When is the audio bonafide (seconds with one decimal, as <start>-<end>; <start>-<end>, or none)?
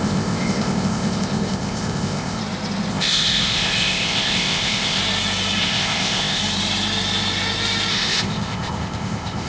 2.4-2.9; 5.0-5.6; 6.4-7.9